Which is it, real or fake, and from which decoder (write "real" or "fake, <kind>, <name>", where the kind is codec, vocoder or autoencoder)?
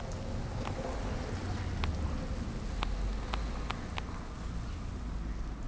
real